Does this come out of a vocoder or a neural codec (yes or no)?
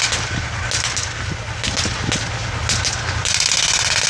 no